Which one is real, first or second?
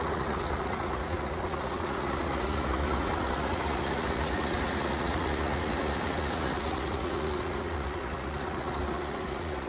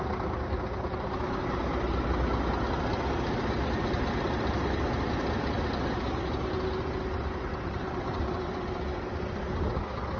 second